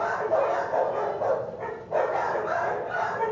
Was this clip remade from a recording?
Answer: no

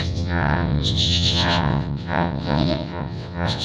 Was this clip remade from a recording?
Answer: yes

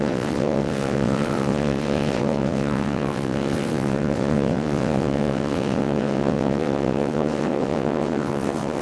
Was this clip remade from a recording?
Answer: yes